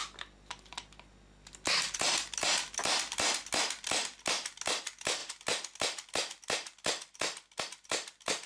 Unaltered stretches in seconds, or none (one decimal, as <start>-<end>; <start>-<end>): 0.0-8.5